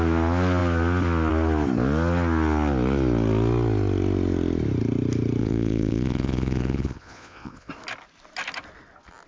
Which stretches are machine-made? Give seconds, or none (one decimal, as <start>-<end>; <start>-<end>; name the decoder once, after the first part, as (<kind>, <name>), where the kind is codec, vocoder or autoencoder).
5.4-7.7 (vocoder, Vocos)